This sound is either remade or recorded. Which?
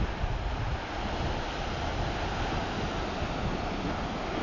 recorded